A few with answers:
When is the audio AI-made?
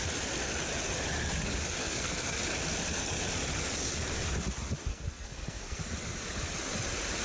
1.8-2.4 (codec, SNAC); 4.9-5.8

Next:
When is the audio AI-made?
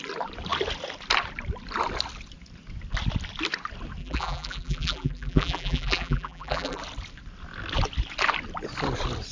4.0-6.8 (vocoder, BigVGAN v2)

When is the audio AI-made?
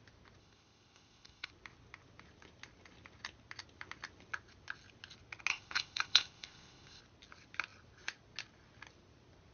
0.4-1.5 (codec, ZipCodec); 5.5-7.0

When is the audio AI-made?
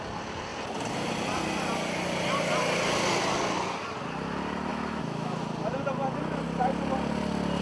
4.7-5.4 (autoencoder, DAC-VAE)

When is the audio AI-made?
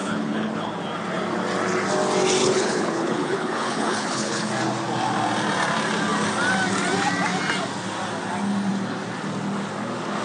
0.0-0.7 (codec, HILCodec); 2.4-4.5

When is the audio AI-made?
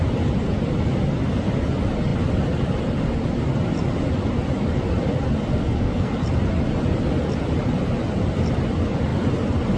5.5-6.1 (codec, SNAC)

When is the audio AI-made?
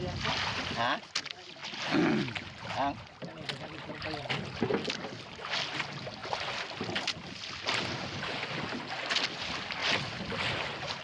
none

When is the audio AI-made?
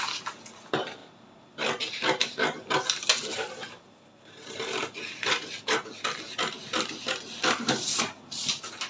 none